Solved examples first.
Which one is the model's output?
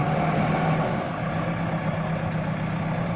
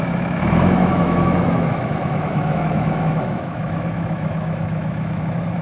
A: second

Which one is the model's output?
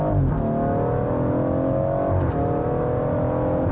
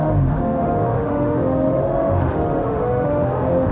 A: second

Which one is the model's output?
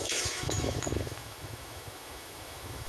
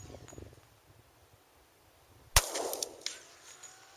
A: first